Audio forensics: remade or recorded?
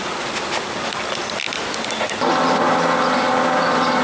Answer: recorded